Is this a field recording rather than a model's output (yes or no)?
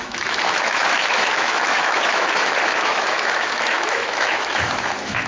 no